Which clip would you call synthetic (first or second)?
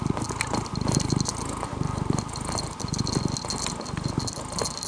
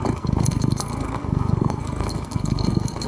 second